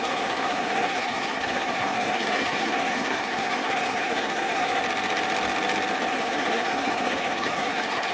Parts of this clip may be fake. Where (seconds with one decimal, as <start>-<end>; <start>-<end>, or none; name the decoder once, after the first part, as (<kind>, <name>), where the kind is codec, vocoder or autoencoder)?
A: 0.0-4.8 (codec, SNAC); 6.1-8.1